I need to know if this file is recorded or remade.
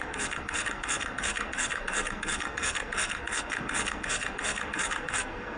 remade